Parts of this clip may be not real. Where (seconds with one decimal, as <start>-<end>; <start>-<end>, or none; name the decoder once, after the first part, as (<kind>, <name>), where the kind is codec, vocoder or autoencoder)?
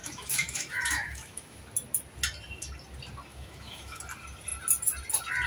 0.0-1.6 (autoencoder, DAC-VAE); 3.3-4.0